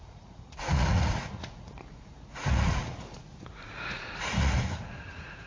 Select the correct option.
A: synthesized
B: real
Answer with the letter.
A